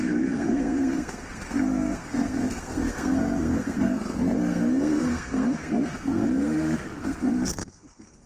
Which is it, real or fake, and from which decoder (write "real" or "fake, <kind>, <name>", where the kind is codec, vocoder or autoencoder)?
fake, codec, SNAC